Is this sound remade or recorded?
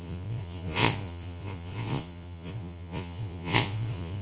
remade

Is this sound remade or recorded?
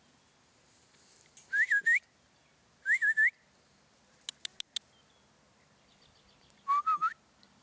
recorded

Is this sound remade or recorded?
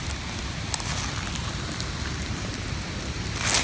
recorded